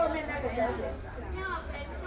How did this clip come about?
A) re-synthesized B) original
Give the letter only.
B